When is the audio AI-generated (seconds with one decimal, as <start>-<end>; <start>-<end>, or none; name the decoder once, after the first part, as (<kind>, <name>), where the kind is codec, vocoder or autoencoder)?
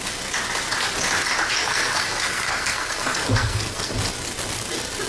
1.6-3.9 (codec, SNAC)